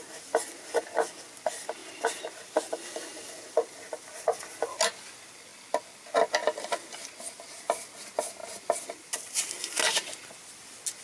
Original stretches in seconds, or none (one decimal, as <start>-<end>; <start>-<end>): 0.0-11.0